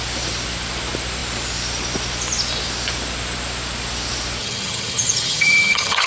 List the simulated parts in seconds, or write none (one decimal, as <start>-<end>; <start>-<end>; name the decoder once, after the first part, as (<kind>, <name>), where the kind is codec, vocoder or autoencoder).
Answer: 4.4-6.1 (vocoder, HiFi-GAN)